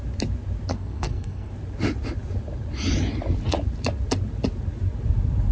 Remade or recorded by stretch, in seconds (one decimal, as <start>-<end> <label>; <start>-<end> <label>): 0.0-0.7 recorded; 0.7-1.5 remade; 1.5-5.5 recorded